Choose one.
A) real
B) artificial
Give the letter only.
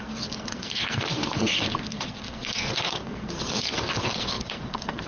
B